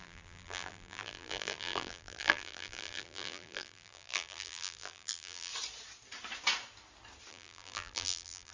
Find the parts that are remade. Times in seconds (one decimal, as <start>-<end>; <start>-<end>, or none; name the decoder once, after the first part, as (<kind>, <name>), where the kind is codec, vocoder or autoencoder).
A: 0.0-5.5 (vocoder, BigVGAN v2); 7.3-8.5